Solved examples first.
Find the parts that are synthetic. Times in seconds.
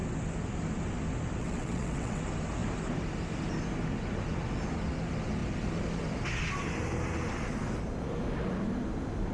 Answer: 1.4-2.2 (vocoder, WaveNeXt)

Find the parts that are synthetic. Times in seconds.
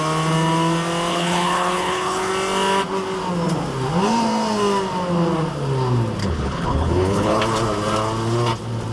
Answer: 1.1-2.3 (codec, HILCodec); 6.2-7.4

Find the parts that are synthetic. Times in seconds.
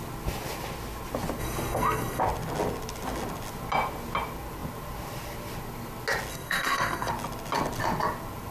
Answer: 1.4-2.2 (codec, SNAC); 6.3-7.1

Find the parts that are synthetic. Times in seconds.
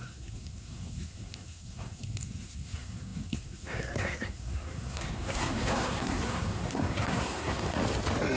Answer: 0.0-7.8 (codec, SNAC)